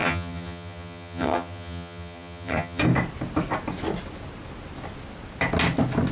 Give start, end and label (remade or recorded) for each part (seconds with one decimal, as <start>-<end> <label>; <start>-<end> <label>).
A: 0.0-2.8 remade; 2.8-6.1 recorded

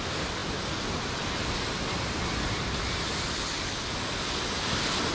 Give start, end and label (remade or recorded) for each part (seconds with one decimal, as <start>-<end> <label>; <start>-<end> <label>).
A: 0.0-5.1 recorded

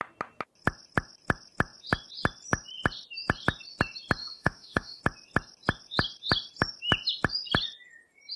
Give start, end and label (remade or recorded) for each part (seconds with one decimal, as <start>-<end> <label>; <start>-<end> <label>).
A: 0.0-4.2 recorded; 4.2-5.0 remade; 5.0-8.4 recorded

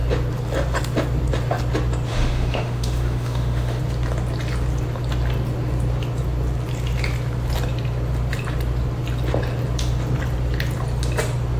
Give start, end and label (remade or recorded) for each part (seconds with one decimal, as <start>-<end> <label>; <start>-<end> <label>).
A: 0.0-2.1 recorded; 2.1-3.8 remade; 3.8-11.6 recorded

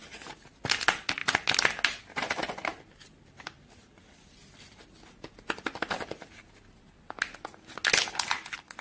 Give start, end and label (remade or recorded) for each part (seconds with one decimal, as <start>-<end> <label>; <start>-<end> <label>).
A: 0.0-8.8 recorded

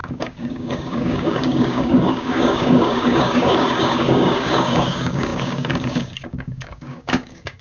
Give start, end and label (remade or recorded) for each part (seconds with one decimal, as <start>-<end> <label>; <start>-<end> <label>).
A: 0.0-7.6 remade